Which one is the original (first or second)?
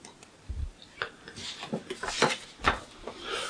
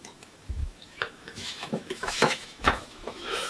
first